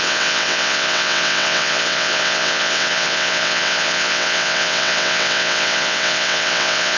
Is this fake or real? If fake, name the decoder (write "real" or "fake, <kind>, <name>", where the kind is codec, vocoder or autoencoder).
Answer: fake, vocoder, WaveNeXt